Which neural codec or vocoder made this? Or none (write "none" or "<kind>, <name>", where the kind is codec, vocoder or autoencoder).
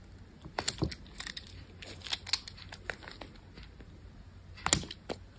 none